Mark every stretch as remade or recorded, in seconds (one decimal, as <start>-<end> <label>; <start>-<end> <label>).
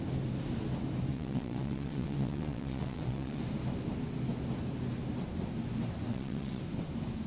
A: 0.0-1.1 recorded; 1.1-3.4 remade; 3.4-6.1 recorded; 6.1-6.6 remade; 6.6-7.3 recorded